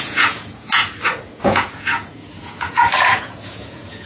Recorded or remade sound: remade